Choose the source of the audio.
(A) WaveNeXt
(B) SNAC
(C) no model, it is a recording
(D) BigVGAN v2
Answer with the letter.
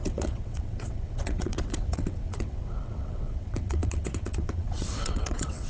A